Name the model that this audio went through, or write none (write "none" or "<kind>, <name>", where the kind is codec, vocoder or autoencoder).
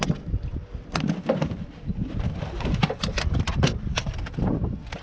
none